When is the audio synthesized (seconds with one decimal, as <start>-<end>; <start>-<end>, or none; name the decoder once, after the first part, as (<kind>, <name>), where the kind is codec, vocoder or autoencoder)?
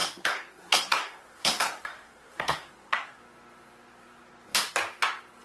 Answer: 0.0-3.2 (codec, SNAC)